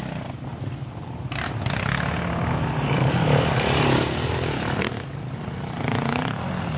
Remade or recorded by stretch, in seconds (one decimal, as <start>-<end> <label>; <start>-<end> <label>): 0.0-6.8 recorded